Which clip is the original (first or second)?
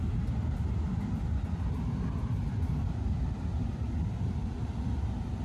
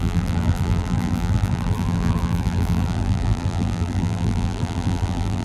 first